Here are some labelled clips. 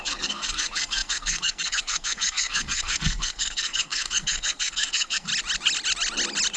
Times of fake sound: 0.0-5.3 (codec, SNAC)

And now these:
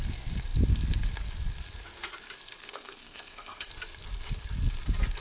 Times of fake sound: 2.6-3.7 (codec, SNAC)

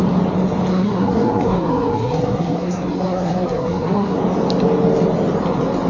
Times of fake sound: 0.7-4.2 (codec, SNAC)

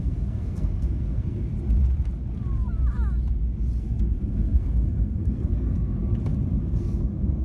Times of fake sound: 0.0-1.5 (codec, SNAC); 3.8-6.0; 6.6-7.4

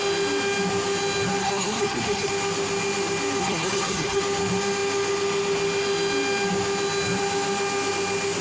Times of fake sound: 1.4-2.3 (codec, SNAC); 3.4-4.2

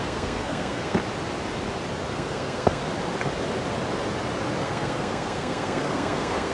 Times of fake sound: 0.0-1.0 (codec, SNAC); 2.1-2.8; 4.6-6.5